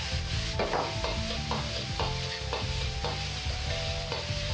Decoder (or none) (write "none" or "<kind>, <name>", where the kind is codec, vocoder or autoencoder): none